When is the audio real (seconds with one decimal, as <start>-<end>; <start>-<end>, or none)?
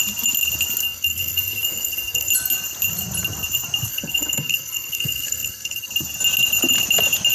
0.0-0.8; 2.3-3.9; 5.9-7.3